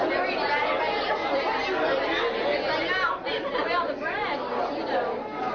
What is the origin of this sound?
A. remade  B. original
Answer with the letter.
B